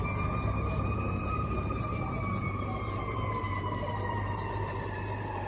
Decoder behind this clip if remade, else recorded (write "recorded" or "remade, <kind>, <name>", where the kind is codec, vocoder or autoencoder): remade, vocoder, BigVGAN v2